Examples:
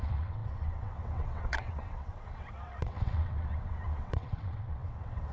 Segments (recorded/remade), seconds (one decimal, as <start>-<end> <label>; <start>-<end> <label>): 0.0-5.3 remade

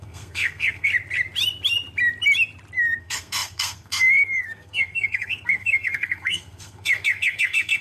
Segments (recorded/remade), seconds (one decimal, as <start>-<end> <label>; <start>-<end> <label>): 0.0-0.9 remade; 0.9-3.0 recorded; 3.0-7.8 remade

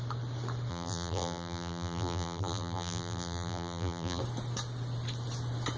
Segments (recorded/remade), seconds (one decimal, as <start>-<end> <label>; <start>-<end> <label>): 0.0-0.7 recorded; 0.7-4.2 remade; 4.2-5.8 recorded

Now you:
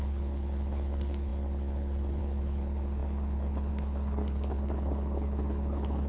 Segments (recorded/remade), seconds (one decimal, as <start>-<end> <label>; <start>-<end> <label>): 0.0-6.1 remade

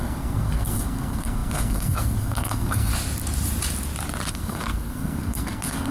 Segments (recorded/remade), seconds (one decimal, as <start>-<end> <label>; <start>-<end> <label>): 0.0-2.9 remade; 2.9-4.3 recorded; 4.3-5.9 remade

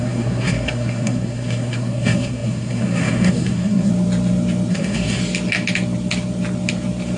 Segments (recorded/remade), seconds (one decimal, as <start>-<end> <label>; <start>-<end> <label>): 0.0-3.9 remade; 3.9-4.7 recorded; 4.7-5.2 remade; 5.2-7.2 recorded